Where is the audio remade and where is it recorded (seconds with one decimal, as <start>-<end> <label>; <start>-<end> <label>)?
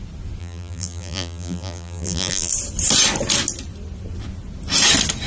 0.0-0.4 recorded; 0.4-2.5 remade; 2.5-5.3 recorded